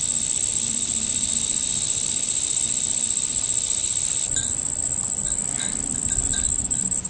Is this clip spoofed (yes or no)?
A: no